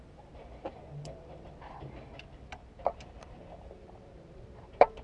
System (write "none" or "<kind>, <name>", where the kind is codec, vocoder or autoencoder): vocoder, BigVGAN v2